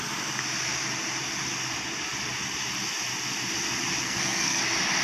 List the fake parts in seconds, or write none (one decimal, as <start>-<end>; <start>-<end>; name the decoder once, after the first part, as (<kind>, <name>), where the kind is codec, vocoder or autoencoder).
4.0-4.6 (codec, SNAC)